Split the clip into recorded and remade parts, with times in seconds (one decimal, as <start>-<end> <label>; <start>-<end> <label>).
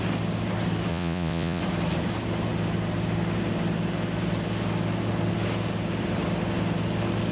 0.0-0.9 recorded; 0.9-1.6 remade; 1.6-7.3 recorded